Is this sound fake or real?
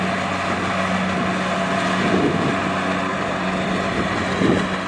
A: real